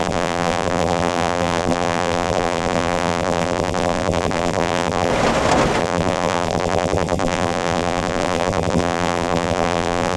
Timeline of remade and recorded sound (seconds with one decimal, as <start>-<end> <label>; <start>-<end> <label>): 0.0-5.1 remade; 5.1-5.8 recorded; 5.8-10.2 remade